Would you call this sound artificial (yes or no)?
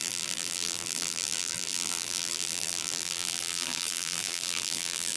yes